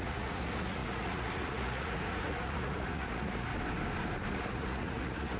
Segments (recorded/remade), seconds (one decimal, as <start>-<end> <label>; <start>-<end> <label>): 0.0-3.5 remade; 3.5-4.3 recorded; 4.3-5.4 remade